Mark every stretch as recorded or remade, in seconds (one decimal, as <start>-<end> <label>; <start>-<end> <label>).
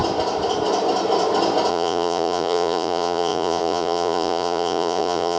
0.0-1.7 recorded; 1.7-5.4 remade